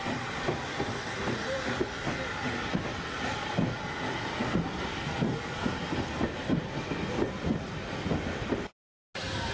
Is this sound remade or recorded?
recorded